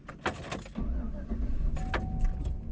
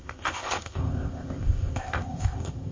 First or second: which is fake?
second